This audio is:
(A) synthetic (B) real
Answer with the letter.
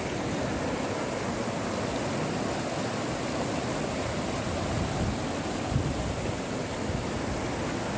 B